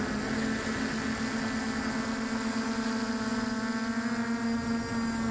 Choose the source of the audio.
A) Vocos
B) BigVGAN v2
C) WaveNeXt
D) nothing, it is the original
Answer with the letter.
D